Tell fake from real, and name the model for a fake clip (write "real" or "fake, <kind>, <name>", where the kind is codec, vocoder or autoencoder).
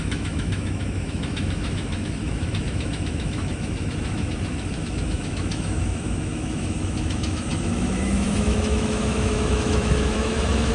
fake, autoencoder, DAC-VAE